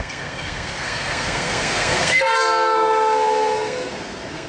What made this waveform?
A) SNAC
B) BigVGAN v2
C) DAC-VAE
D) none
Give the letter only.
A